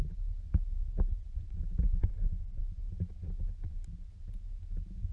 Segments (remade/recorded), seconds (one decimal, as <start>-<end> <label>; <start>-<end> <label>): 0.0-2.0 recorded; 2.0-2.6 remade; 2.6-5.1 recorded